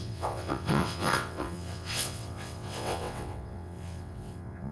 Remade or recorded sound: remade